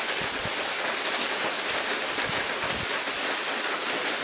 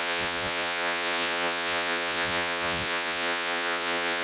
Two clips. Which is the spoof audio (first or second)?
second